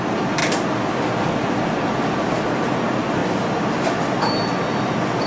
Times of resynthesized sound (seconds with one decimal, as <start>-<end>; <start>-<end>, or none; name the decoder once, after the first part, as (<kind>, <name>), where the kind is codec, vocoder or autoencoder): none